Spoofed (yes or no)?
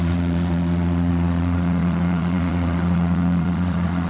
yes